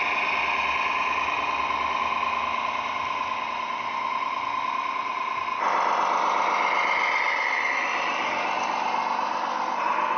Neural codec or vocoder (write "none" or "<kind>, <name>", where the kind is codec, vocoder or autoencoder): none